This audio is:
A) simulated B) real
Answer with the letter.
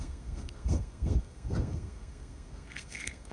A